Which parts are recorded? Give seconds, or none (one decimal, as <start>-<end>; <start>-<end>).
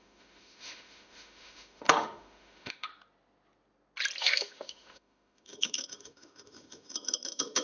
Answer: 2.9-4.2